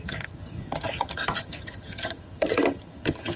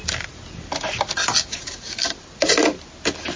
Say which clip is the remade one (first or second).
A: first